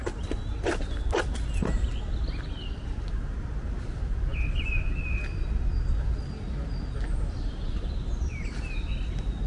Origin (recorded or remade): recorded